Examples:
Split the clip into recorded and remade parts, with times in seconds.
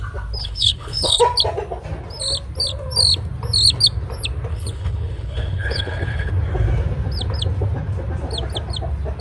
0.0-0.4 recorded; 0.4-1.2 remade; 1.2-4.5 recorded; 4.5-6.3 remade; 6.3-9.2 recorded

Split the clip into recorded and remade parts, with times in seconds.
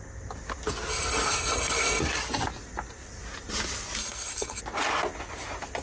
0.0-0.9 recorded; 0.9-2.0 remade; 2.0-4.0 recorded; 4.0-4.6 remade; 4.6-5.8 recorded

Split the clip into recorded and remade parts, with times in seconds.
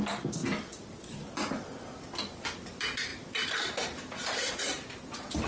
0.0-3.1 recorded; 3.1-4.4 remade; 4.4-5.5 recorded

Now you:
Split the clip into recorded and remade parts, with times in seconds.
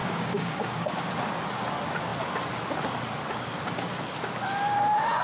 0.0-0.9 remade; 0.9-5.2 recorded